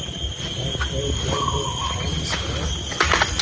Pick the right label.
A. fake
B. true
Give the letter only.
B